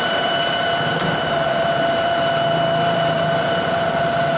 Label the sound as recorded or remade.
remade